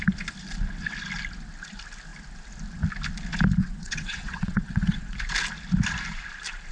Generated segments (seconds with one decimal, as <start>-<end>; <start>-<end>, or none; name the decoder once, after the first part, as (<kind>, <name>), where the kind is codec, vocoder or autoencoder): 3.6-5.0 (vocoder, WaveNeXt)